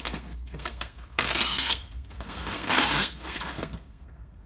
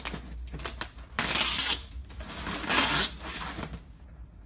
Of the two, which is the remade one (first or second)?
first